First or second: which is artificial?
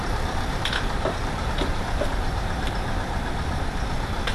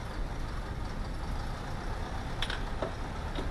first